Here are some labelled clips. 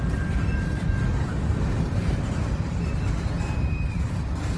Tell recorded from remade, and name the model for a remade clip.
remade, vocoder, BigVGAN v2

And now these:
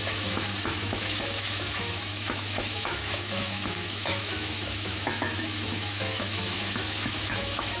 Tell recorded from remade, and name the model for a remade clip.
remade, autoencoder, DAC-VAE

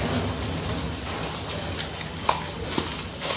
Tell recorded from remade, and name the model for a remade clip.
recorded